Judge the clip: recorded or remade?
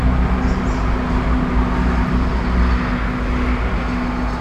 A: recorded